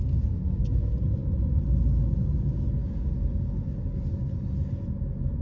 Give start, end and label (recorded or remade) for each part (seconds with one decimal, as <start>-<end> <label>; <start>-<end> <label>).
0.0-5.4 recorded